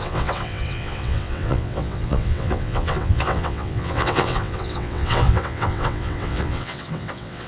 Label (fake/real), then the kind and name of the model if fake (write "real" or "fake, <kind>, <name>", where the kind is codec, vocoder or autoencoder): fake, vocoder, WaveNeXt